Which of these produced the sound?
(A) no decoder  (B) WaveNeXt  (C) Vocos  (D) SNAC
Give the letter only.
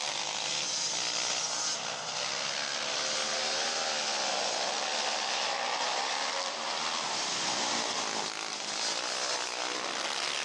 A